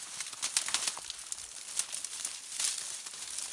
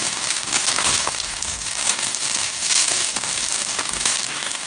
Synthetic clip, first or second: second